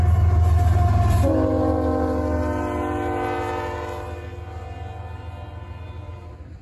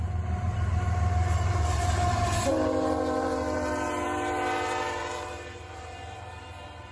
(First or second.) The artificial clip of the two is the second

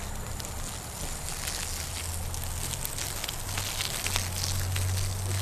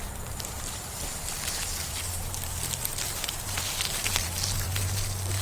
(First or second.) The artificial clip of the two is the second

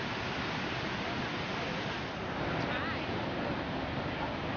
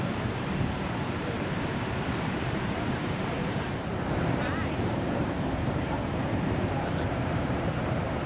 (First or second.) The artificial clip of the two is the second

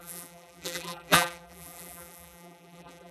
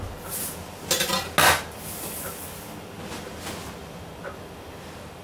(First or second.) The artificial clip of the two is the first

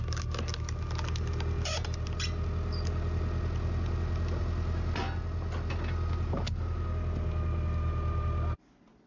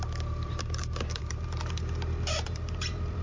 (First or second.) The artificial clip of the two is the second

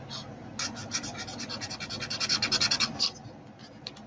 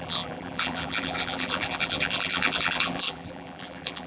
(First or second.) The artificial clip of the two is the second